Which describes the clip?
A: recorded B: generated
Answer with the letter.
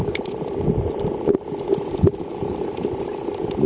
A